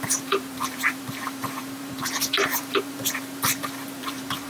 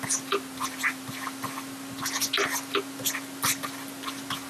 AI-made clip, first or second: first